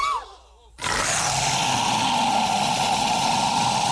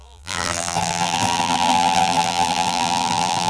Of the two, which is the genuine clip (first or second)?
first